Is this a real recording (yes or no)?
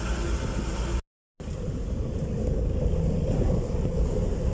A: yes